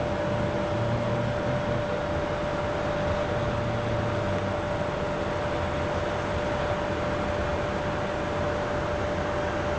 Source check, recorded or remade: recorded